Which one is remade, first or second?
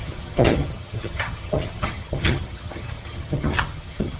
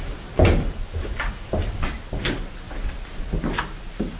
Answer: first